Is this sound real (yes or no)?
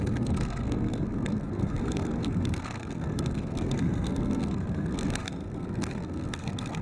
no